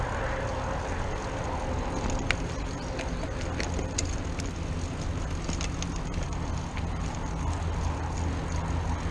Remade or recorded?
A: recorded